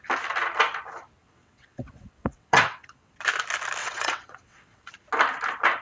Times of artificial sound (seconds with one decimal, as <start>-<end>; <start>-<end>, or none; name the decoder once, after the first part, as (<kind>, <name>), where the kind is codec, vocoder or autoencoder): 1.2-3.2 (vocoder, WaveNeXt); 3.8-4.9